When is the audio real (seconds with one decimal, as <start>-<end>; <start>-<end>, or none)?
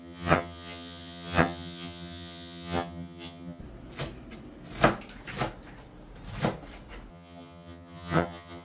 3.6-7.1